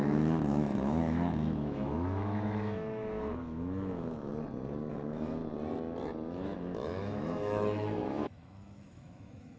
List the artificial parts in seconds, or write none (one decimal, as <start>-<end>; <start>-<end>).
0.0-4.3; 4.9-5.4; 6.3-9.6

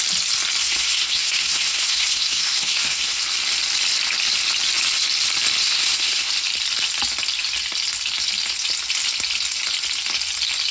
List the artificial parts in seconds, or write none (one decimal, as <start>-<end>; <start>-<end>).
0.6-3.2; 5.6-6.3